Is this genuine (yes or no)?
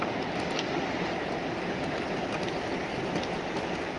yes